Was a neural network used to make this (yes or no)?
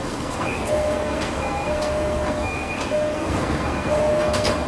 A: yes